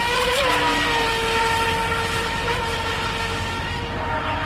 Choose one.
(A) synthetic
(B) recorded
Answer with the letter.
B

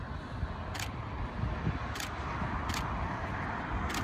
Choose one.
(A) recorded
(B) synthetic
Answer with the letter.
A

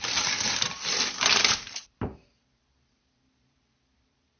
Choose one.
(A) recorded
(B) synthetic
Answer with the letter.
B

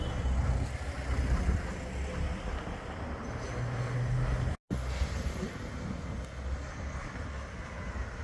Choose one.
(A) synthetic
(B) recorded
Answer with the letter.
B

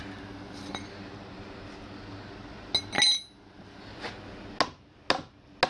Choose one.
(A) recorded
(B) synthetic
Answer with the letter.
A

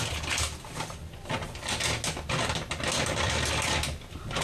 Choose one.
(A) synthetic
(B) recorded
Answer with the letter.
B